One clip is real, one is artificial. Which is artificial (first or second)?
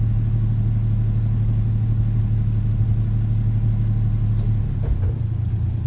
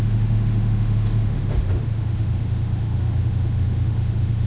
second